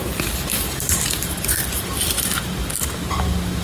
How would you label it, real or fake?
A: real